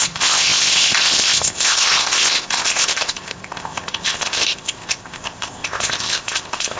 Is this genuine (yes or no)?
no